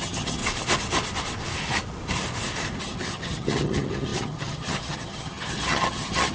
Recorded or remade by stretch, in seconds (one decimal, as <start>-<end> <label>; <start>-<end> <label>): 0.0-0.4 remade; 0.4-2.8 recorded; 2.8-6.3 remade